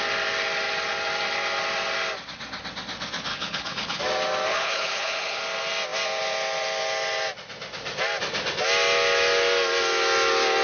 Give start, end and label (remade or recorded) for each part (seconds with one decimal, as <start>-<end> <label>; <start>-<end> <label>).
0.0-3.3 recorded; 3.3-4.0 remade; 4.0-4.5 recorded; 4.5-5.4 remade; 5.4-10.6 recorded